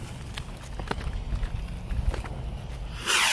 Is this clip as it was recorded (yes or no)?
yes